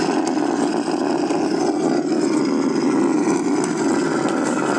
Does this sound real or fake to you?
real